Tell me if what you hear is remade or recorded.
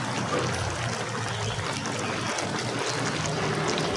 recorded